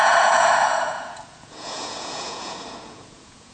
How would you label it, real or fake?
fake